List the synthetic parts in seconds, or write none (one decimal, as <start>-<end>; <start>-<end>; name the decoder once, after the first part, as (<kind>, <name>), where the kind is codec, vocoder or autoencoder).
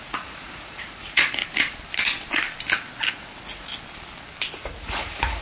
0.0-1.4 (vocoder, Vocos); 3.1-3.7; 4.5-5.4